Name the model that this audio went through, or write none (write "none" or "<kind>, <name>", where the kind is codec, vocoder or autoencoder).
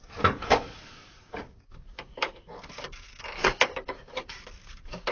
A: codec, DAC